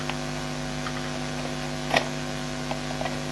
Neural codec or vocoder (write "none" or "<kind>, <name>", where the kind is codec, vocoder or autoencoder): none